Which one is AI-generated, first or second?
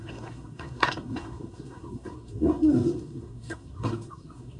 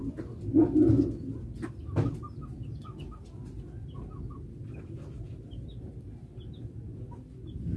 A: first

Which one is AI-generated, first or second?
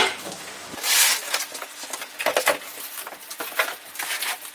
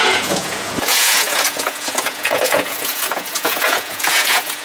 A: second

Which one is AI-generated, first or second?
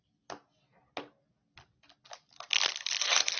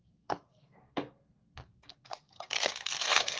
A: second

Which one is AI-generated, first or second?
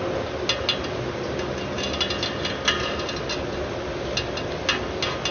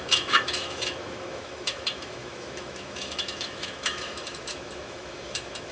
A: second